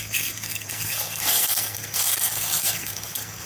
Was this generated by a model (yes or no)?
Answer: yes